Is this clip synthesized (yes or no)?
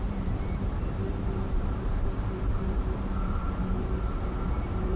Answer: yes